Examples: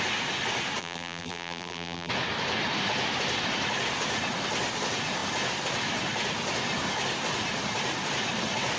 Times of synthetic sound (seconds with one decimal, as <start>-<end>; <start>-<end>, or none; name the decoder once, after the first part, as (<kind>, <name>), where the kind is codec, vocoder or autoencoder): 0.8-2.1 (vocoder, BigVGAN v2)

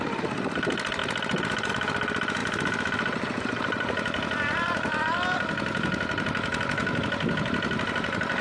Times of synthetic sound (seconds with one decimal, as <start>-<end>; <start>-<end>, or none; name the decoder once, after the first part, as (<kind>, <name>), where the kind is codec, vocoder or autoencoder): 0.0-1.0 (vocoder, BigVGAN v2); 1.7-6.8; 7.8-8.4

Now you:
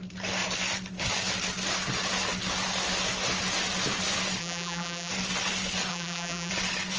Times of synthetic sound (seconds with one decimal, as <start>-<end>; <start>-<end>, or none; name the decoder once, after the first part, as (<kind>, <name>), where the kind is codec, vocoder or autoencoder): 4.4-5.1 (vocoder, BigVGAN v2); 5.9-6.5

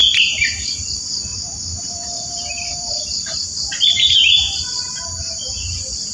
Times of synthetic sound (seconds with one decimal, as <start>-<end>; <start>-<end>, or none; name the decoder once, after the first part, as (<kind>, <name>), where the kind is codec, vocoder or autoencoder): 0.0-0.8 (vocoder, BigVGAN v2); 1.3-5.0